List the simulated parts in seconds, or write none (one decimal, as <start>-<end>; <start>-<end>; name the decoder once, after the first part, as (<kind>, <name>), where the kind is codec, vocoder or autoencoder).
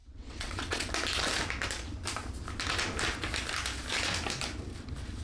0.0-0.9 (vocoder, WaveNeXt)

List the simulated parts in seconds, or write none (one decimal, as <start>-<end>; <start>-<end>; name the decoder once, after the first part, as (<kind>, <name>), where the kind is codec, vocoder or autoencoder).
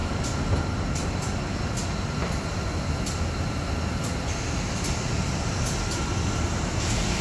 none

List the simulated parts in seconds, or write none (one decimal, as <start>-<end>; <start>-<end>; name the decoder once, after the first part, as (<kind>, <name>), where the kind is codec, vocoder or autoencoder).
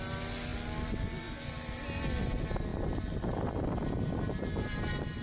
2.7-3.6 (vocoder, BigVGAN v2)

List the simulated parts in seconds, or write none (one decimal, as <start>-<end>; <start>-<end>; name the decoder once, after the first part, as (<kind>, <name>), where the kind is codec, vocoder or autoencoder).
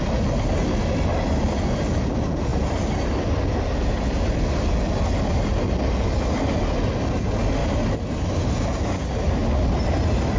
none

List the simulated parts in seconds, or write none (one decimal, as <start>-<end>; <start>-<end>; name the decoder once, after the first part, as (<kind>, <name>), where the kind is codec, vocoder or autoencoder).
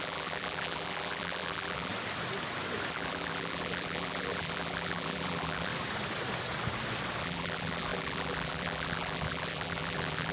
0.0-1.9 (vocoder, BigVGAN v2); 2.9-5.7; 7.2-10.3